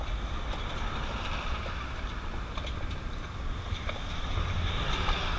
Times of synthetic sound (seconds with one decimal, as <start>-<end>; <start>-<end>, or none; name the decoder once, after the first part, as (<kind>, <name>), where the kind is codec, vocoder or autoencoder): 0.0-2.1 (vocoder, BigVGAN v2); 3.0-5.4